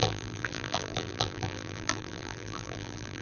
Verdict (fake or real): fake